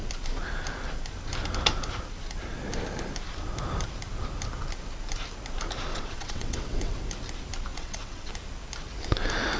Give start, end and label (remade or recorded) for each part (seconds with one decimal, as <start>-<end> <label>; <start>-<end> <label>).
0.0-5.9 recorded; 5.9-7.0 remade; 7.0-7.7 recorded; 7.7-8.3 remade; 8.3-9.6 recorded